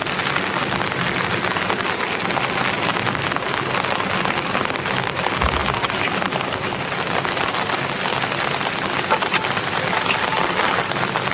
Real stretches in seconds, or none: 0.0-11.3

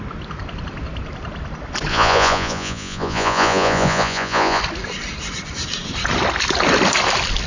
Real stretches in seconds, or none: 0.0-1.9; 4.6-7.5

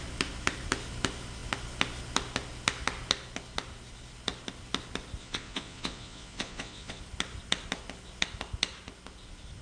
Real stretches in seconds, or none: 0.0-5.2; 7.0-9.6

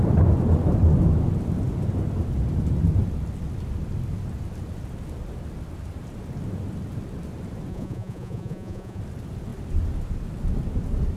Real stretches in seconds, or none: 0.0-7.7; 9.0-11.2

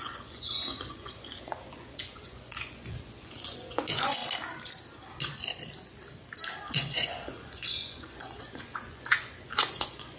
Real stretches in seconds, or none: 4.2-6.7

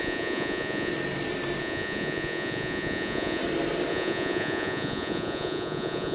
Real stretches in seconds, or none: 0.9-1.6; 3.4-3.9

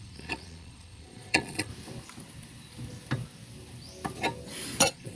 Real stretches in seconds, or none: 1.7-4.8